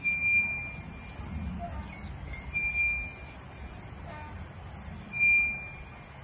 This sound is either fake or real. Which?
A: real